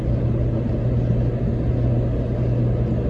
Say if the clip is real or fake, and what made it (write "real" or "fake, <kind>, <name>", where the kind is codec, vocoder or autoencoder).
real